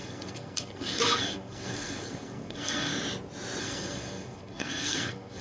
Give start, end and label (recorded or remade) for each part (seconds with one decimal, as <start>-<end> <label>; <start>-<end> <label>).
0.0-2.9 remade; 2.9-3.6 recorded; 3.6-5.4 remade